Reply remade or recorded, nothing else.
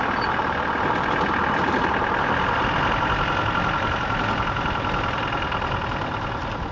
recorded